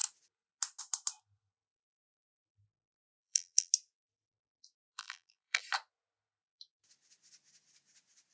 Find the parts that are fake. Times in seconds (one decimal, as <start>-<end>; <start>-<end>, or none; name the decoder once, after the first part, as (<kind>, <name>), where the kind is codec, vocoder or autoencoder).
2.6-3.7 (vocoder, BigVGAN v2); 4.3-5.6